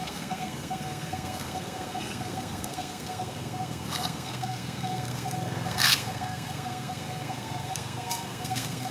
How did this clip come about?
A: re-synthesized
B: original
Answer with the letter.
A